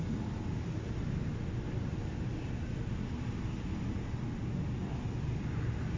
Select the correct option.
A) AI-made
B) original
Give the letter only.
B